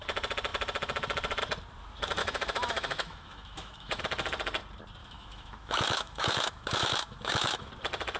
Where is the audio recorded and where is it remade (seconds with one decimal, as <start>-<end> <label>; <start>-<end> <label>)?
0.0-2.2 recorded; 2.2-4.0 remade; 4.0-5.0 recorded; 5.0-7.7 remade; 7.7-8.2 recorded